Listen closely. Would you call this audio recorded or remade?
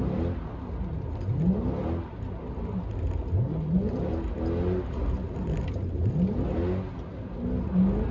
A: recorded